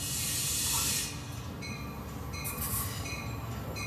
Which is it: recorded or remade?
recorded